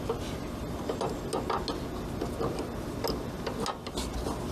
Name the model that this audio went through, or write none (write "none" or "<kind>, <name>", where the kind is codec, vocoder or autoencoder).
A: none